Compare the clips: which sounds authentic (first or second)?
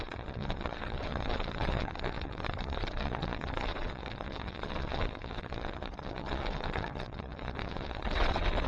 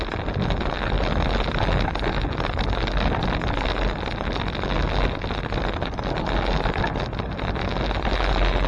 second